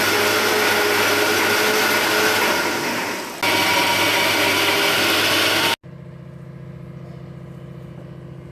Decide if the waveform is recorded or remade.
recorded